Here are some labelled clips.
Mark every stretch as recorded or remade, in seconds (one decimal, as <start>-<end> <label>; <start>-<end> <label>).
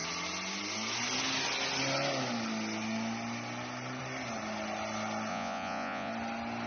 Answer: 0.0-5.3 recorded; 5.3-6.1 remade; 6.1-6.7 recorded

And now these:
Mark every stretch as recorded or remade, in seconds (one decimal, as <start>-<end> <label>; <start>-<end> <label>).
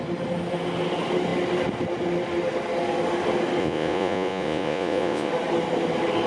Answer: 0.0-3.6 recorded; 3.6-5.3 remade; 5.3-6.3 recorded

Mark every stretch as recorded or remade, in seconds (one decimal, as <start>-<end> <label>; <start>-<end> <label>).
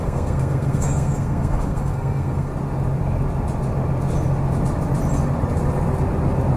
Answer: 0.0-2.5 remade; 2.5-6.6 recorded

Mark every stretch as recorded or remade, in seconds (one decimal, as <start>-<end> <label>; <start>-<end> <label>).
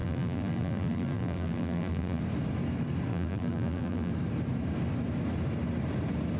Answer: 0.0-2.2 remade; 2.2-3.1 recorded; 3.1-4.1 remade; 4.1-6.4 recorded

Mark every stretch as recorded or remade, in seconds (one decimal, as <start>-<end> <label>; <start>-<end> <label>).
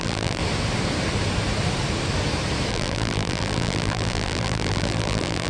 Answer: 0.0-0.4 remade; 0.4-2.7 recorded; 2.7-5.5 remade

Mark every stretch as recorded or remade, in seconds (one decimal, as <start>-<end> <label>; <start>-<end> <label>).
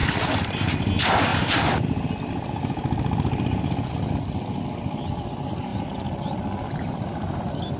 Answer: 0.0-0.9 remade; 0.9-5.7 recorded; 5.7-6.7 remade; 6.7-7.8 recorded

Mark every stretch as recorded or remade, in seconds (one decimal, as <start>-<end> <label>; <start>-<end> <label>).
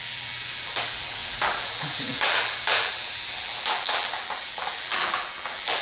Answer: 0.0-5.8 remade